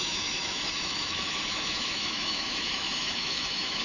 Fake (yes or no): yes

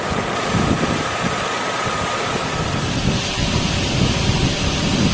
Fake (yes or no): no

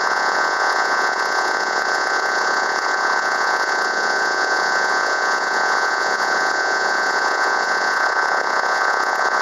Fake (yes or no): yes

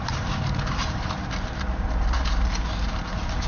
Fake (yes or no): yes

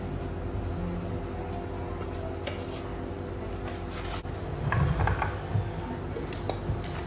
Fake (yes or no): no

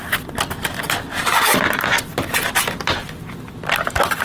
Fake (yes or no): no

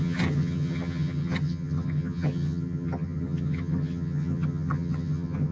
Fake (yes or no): yes